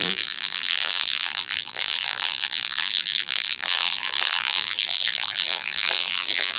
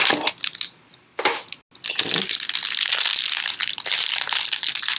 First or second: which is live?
second